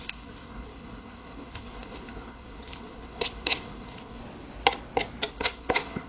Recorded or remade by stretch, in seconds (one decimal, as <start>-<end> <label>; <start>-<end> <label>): 0.0-4.2 remade; 4.2-5.3 recorded; 5.3-6.1 remade